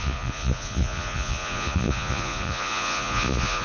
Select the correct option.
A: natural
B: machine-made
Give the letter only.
B